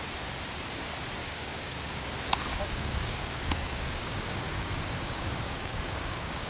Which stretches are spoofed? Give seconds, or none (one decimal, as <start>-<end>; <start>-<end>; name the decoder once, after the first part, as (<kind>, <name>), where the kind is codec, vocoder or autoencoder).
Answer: 1.2-2.0 (codec, DAC); 2.5-6.5